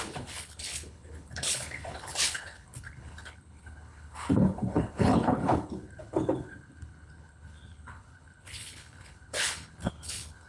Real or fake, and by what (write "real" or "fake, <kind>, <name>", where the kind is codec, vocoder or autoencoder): fake, codec, HILCodec